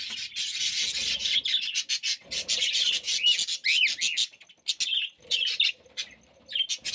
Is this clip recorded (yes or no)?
yes